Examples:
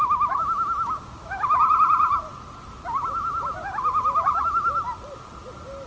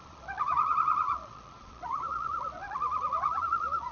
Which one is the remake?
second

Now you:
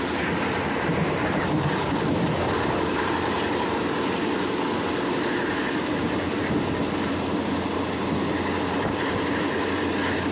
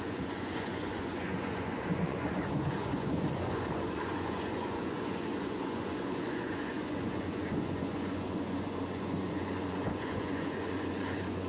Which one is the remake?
second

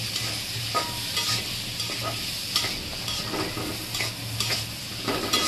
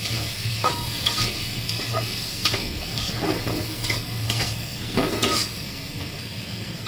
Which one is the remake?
second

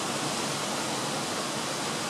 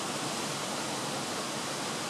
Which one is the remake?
second